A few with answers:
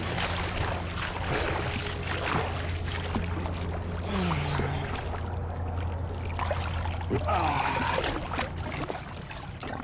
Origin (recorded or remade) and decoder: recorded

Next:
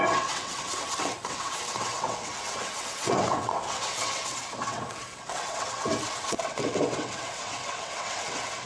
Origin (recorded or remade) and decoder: remade, vocoder, WaveNeXt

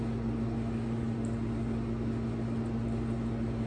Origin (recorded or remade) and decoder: recorded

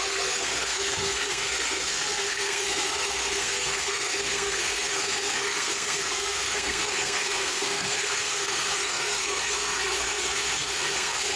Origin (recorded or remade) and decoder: remade, codec, SNAC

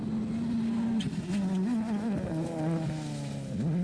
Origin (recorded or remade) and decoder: recorded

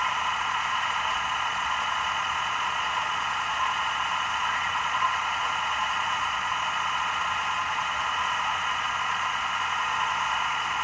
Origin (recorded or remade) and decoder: remade, vocoder, Vocos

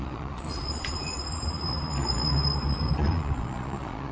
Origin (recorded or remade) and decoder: remade, vocoder, Vocos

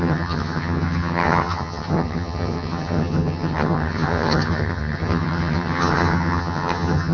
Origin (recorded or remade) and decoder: remade, vocoder, HiFi-GAN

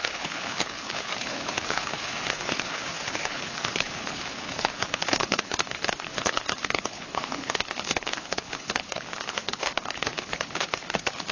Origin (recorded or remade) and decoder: remade, codec, HILCodec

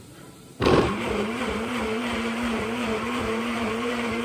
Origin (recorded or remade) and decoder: remade, vocoder, BigVGAN v2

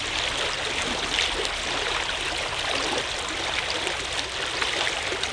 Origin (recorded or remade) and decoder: recorded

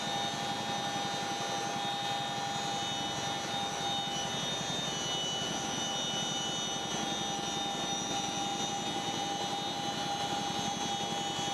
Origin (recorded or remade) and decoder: recorded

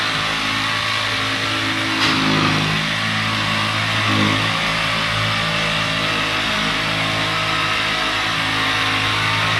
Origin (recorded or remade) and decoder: recorded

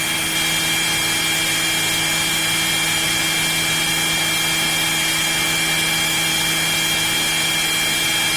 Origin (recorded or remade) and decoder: recorded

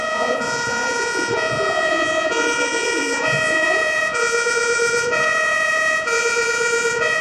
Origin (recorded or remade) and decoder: remade, vocoder, Vocos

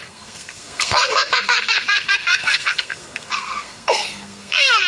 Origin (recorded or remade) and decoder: remade, codec, SNAC